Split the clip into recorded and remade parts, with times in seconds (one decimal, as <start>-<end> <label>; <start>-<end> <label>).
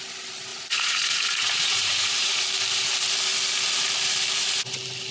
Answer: 0.0-0.5 recorded; 0.5-2.4 remade; 2.4-5.1 recorded